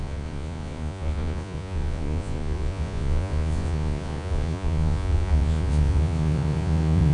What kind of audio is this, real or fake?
fake